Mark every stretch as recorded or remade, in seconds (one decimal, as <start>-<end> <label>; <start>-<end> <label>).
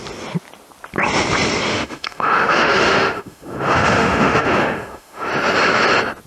0.0-1.7 recorded; 1.7-5.3 remade; 5.3-6.3 recorded